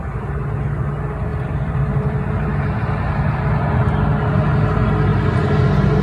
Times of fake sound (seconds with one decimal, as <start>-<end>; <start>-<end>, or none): 1.3-4.0